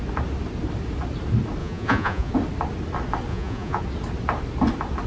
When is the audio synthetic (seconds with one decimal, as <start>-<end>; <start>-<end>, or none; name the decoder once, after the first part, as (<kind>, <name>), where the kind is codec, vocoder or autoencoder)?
1.6-2.3 (vocoder, Vocos); 3.3-3.8